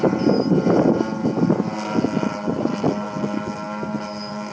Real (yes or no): yes